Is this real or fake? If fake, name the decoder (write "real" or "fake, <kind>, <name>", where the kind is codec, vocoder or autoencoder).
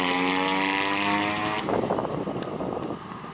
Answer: real